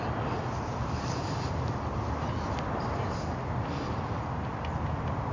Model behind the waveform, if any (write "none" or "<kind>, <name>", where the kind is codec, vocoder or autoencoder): none